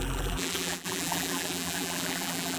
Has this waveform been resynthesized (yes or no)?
yes